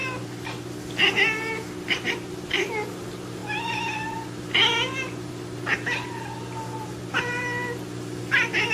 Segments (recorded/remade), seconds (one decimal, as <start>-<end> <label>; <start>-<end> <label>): 0.0-8.7 recorded